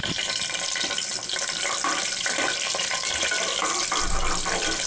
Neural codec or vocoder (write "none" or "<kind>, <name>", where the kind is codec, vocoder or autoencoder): none